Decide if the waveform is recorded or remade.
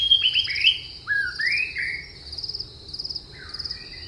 recorded